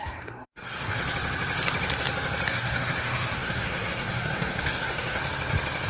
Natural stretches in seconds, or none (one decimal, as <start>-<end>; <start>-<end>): 1.0-2.5; 5.2-5.9